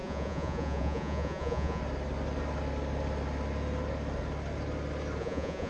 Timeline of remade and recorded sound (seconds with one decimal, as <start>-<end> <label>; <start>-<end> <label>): 0.0-1.8 remade; 1.8-5.2 recorded; 5.2-5.7 remade